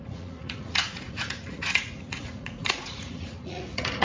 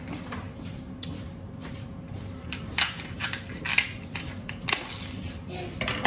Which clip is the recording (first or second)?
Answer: second